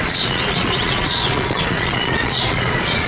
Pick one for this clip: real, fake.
fake